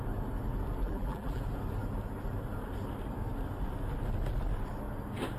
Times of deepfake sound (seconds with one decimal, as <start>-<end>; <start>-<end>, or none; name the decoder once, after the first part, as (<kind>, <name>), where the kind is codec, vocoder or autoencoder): 0.8-1.4 (vocoder, BigVGAN v2)